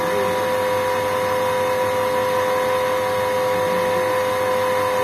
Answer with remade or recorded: recorded